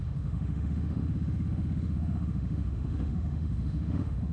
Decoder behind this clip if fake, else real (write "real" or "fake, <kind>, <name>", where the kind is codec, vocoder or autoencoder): fake, autoencoder, DAC-VAE